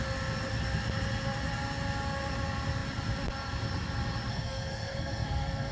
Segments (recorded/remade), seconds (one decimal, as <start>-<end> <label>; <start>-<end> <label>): 0.0-4.3 recorded; 4.3-5.7 remade